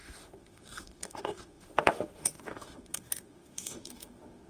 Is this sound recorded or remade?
remade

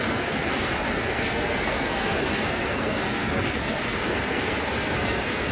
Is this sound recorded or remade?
remade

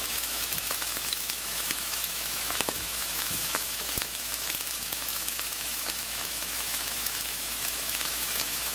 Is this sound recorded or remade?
remade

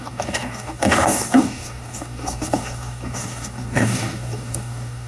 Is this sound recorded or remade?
remade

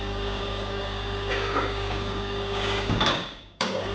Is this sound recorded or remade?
remade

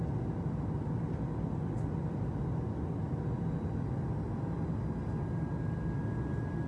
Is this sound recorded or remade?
recorded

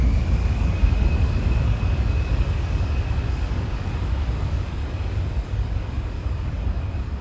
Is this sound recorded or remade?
remade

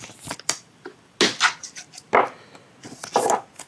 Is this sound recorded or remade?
recorded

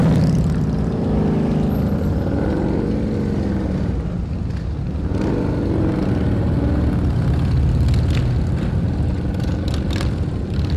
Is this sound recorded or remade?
recorded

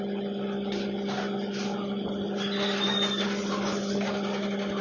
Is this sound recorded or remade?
recorded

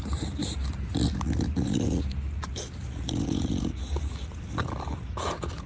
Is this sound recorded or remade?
recorded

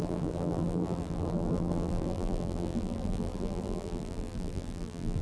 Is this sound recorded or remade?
remade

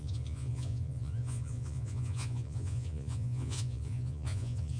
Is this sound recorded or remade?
remade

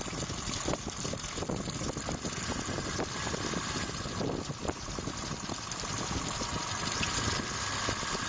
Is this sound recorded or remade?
recorded